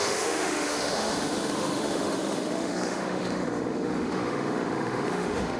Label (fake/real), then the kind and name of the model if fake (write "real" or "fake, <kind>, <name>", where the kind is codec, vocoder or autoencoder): fake, autoencoder, DAC-VAE